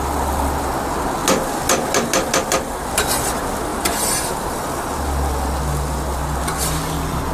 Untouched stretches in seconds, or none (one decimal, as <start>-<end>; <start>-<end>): 0.0-7.3